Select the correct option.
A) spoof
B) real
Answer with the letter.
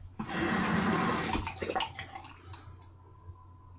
B